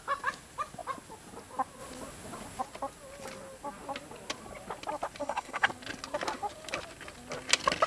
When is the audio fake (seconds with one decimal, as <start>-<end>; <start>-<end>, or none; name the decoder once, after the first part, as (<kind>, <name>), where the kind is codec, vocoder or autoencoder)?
5.2-5.7 (codec, SNAC)